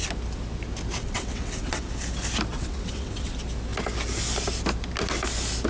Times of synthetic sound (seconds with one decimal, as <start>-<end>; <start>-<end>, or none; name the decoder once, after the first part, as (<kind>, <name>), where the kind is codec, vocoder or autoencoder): 1.0-1.9 (vocoder, WaveNeXt); 2.5-3.3